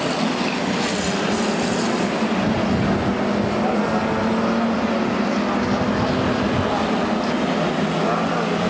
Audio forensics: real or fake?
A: real